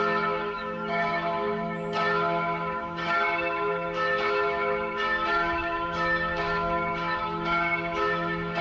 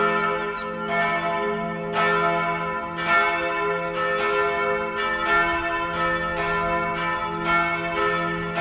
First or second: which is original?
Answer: second